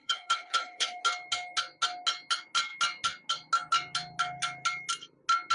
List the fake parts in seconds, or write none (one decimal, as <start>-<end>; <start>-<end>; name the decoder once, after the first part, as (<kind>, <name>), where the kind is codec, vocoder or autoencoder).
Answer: 0.0-1.0 (codec, HILCodec)